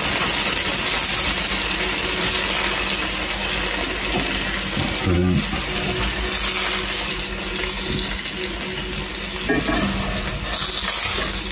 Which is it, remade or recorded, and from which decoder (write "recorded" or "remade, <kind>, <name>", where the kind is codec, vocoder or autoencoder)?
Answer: recorded